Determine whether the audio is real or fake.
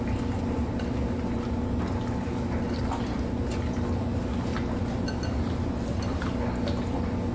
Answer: real